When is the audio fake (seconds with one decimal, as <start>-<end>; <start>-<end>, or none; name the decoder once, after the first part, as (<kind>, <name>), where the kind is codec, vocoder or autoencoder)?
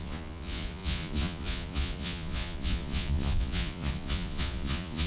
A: 0.0-5.1 (vocoder, Vocos)